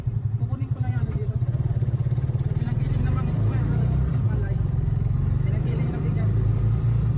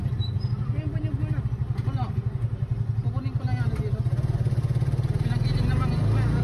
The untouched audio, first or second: second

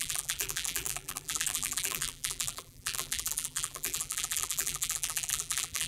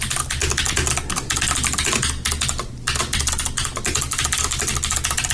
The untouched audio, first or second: second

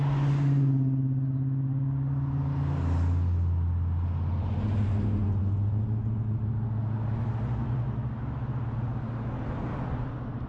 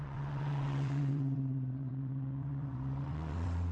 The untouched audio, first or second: first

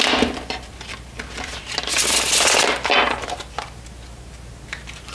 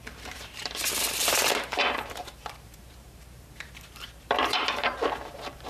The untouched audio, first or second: first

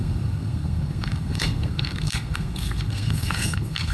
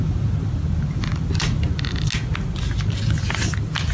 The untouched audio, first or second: second